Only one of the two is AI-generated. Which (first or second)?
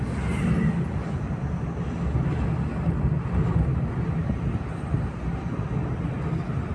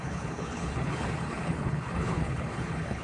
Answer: second